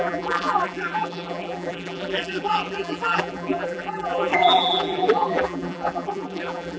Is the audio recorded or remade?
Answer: remade